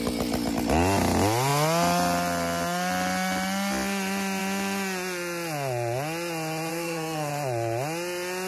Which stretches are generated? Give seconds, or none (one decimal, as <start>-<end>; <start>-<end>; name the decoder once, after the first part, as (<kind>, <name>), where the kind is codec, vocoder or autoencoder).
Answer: 6.7-7.3 (codec, SNAC)